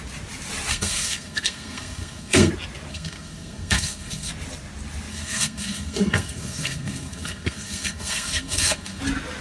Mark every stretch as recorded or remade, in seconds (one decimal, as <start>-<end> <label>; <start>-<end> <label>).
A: 0.0-0.7 recorded; 0.7-2.5 remade; 2.5-2.9 recorded; 2.9-4.3 remade; 4.3-5.1 recorded; 5.1-9.0 remade; 9.0-9.4 recorded